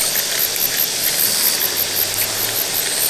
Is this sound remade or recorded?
recorded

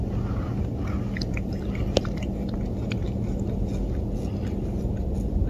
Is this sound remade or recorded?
recorded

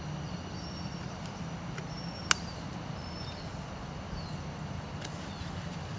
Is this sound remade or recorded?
recorded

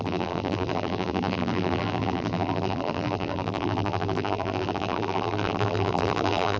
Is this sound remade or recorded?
remade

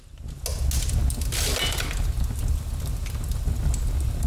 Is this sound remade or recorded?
recorded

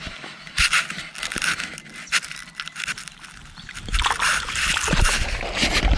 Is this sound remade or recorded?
recorded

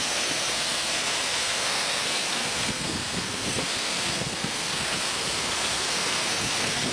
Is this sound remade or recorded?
remade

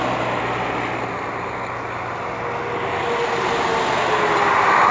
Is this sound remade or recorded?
recorded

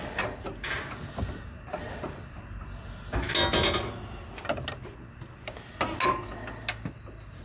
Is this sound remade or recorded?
recorded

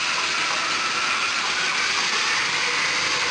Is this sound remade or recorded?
recorded